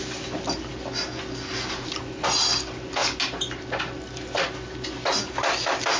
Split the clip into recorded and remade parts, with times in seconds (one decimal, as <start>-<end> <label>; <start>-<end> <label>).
0.0-6.0 recorded